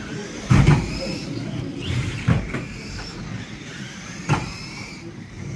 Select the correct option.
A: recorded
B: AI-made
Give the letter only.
B